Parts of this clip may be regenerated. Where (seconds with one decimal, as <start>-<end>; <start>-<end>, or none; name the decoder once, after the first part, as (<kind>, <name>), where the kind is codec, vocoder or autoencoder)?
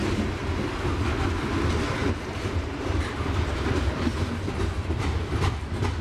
2.0-5.6 (vocoder, BigVGAN v2)